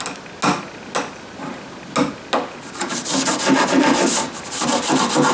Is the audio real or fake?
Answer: real